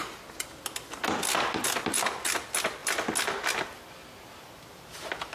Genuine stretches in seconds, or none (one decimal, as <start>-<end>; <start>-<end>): 0.0-5.3